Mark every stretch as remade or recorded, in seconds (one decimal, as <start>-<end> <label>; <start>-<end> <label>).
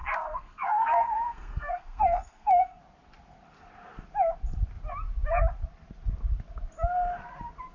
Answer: 0.0-2.8 remade; 2.8-7.7 recorded